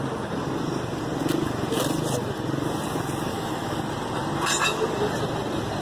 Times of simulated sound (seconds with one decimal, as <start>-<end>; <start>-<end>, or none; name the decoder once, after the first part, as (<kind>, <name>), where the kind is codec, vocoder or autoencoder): 3.3-3.8 (autoencoder, DAC-VAE)

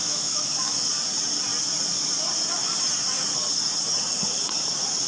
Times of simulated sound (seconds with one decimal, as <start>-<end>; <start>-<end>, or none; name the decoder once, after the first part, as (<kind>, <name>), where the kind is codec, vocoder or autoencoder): 0.0-0.9 (autoencoder, DAC-VAE)

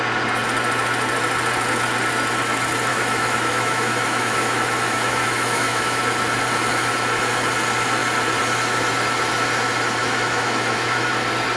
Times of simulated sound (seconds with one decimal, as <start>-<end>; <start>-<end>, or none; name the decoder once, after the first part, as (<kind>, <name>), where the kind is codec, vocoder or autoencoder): 2.9-6.0 (autoencoder, DAC-VAE); 10.0-11.1

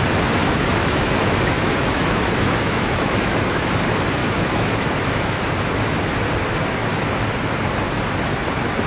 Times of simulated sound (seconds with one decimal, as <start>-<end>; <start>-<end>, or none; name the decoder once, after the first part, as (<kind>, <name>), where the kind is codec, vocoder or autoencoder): 0.4-3.7 (autoencoder, DAC-VAE); 4.2-5.6

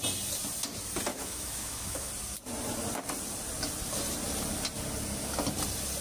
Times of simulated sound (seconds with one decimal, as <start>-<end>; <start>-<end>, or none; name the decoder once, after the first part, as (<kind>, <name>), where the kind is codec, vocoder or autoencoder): 1.1-2.1 (autoencoder, DAC-VAE)

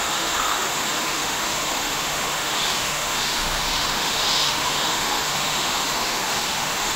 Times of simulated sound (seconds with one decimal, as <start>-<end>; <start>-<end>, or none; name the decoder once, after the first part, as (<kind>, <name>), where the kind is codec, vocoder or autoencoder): 0.0-7.0 (autoencoder, DAC-VAE)